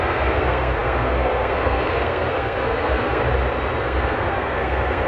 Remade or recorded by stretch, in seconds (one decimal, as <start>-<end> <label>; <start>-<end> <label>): 0.0-3.2 remade; 3.2-3.8 recorded; 3.8-5.1 remade